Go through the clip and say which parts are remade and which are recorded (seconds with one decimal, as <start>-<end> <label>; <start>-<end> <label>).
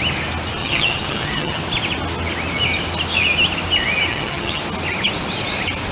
0.0-0.6 recorded; 0.6-1.6 remade; 1.6-4.1 recorded; 4.1-4.6 remade; 4.6-5.9 recorded